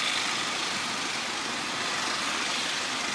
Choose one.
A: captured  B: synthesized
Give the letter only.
A